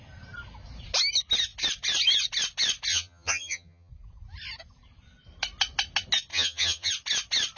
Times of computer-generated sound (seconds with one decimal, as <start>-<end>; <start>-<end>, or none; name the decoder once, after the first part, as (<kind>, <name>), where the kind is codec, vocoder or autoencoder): 2.9-3.9 (vocoder, HiFi-GAN); 6.3-6.9